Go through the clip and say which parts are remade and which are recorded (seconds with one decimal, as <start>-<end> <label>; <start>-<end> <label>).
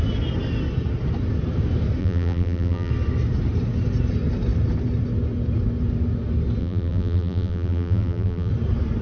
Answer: 0.0-2.0 recorded; 2.0-2.9 remade; 2.9-6.6 recorded; 6.6-8.5 remade; 8.5-9.0 recorded